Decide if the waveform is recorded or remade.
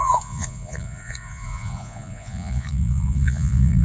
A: remade